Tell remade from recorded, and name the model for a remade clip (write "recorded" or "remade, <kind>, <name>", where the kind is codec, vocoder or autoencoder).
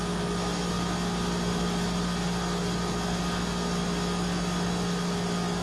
recorded